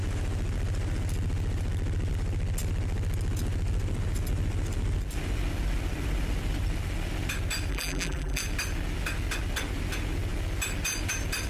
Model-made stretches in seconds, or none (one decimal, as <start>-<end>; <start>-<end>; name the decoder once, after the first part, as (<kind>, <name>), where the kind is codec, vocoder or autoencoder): 7.7-8.4 (vocoder, BigVGAN v2)